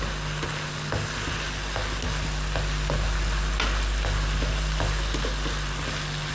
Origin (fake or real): real